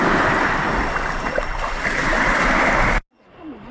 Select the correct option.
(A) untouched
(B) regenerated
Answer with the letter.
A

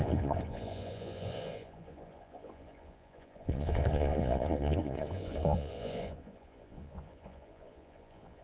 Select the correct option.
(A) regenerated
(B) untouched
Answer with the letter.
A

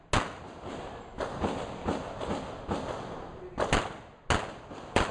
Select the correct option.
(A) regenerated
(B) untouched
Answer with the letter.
B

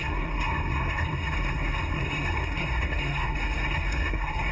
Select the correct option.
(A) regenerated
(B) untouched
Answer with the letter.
A